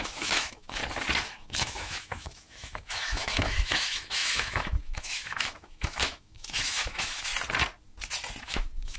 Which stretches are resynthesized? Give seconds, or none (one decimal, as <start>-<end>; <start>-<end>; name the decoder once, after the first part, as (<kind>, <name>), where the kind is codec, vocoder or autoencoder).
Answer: 0.0-0.8 (autoencoder, DAC-VAE); 1.3-7.3; 8.4-9.0